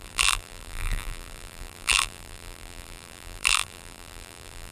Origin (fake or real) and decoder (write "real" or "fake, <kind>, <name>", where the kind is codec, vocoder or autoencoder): fake, vocoder, BigVGAN v2